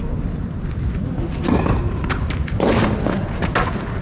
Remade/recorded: recorded